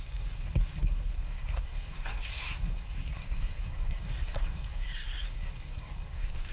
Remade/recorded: remade